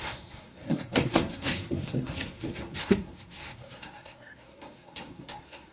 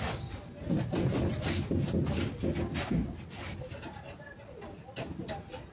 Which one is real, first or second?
second